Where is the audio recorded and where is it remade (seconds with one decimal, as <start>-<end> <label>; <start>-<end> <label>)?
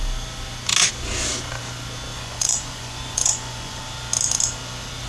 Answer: 0.0-2.1 recorded; 2.1-3.8 remade; 3.8-5.1 recorded